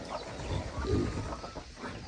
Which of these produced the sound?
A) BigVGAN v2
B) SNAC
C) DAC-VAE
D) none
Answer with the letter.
D